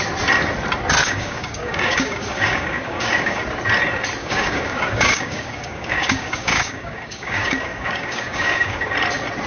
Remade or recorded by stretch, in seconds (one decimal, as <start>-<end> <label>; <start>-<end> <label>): 0.0-1.0 recorded; 1.0-3.4 remade; 3.4-4.2 recorded; 4.2-8.9 remade; 8.9-9.5 recorded